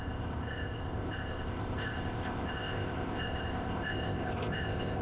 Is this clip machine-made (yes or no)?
yes